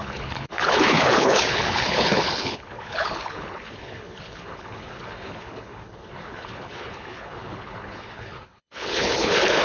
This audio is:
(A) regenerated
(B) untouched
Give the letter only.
A